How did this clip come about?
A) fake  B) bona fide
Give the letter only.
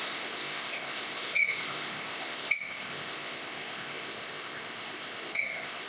A